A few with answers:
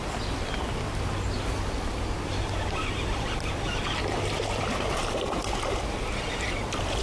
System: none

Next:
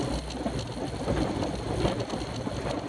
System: none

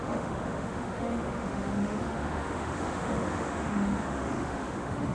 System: autoencoder, DAC-VAE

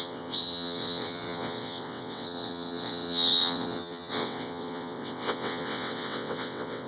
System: vocoder, WaveNeXt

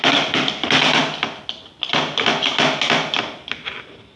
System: none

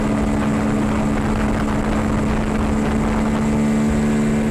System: none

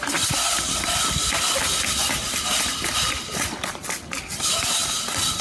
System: none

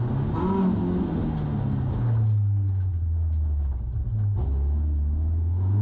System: none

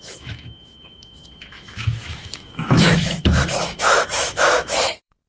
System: autoencoder, DAC-VAE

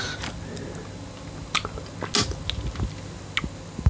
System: none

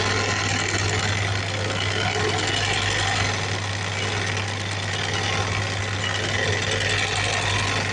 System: none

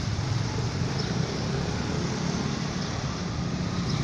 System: none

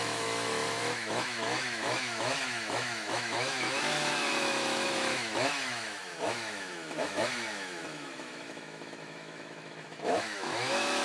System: autoencoder, DAC-VAE